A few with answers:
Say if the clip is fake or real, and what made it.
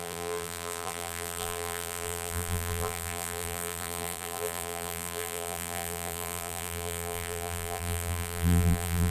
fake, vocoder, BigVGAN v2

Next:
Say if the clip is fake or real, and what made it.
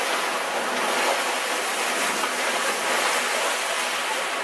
real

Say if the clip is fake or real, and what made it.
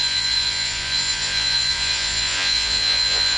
fake, vocoder, Vocos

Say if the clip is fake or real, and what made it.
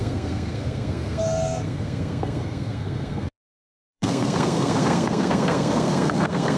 fake, codec, SNAC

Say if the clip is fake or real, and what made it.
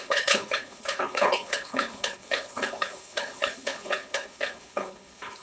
fake, codec, HILCodec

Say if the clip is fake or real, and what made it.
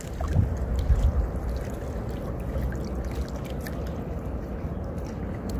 real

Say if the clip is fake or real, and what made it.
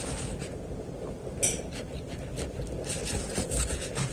real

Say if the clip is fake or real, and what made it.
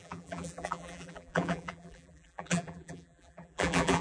fake, vocoder, BigVGAN v2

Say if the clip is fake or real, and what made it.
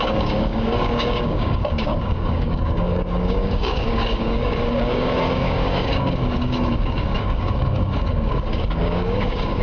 fake, codec, DAC